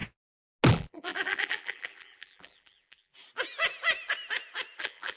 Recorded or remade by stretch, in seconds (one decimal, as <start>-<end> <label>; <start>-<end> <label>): 0.0-0.7 recorded; 0.7-3.1 remade; 3.1-4.8 recorded; 4.8-5.2 remade